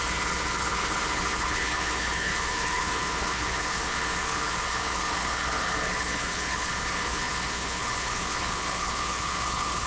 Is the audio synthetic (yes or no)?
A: yes